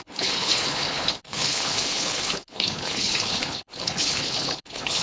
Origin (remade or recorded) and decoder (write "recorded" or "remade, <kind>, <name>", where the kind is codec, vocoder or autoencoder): remade, codec, HILCodec